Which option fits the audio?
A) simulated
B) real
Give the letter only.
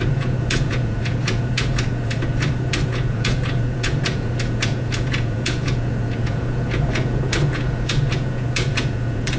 A